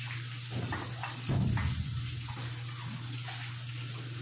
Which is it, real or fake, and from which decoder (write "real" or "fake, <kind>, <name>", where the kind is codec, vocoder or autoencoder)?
real